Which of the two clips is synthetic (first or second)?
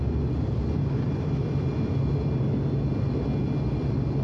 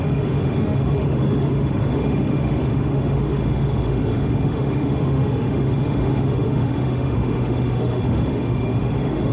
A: second